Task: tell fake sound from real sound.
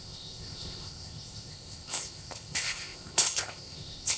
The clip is fake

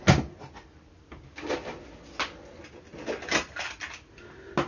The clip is real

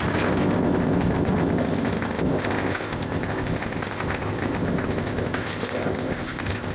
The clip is fake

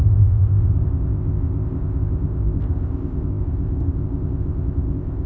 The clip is fake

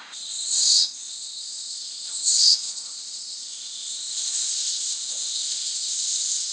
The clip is fake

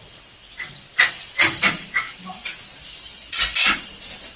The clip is real